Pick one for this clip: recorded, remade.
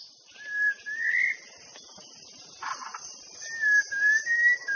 recorded